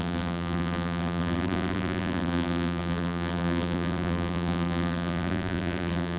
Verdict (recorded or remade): remade